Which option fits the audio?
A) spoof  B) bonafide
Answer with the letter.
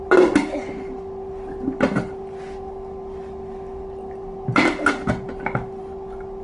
B